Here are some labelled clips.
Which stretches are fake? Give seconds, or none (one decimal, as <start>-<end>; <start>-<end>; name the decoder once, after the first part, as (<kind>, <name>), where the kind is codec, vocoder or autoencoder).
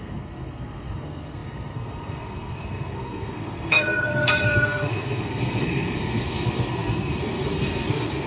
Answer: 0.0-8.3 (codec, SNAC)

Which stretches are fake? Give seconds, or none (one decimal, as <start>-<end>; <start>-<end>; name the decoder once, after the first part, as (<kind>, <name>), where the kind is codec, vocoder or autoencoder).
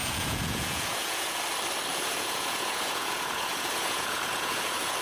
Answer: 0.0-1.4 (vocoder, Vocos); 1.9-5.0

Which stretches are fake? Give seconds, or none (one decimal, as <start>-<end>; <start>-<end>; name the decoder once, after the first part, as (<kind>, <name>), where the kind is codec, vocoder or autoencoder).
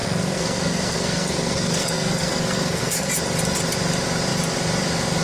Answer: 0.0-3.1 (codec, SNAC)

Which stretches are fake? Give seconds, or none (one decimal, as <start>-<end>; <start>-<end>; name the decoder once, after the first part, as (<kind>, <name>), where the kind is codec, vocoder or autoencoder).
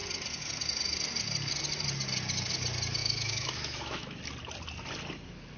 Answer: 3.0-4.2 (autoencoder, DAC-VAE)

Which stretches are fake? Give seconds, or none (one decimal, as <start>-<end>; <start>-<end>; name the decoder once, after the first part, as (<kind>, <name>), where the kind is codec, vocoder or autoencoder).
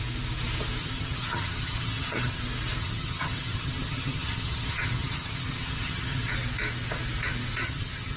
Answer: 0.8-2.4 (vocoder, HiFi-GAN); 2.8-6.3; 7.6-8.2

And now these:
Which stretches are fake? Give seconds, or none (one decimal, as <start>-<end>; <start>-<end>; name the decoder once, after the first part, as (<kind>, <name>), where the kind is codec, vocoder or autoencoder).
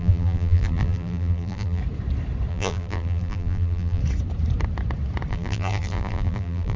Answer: 0.0-1.8 (vocoder, BigVGAN v2); 2.5-4.0; 5.3-6.8